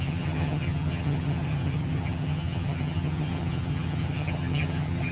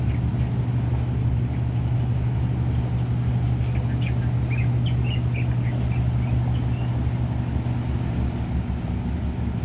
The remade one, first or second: first